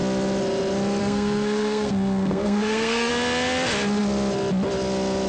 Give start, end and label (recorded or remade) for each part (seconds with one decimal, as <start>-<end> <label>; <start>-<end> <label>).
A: 0.0-1.0 recorded; 1.0-3.1 remade; 3.1-5.3 recorded